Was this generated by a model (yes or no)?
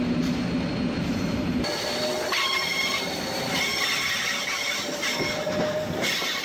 no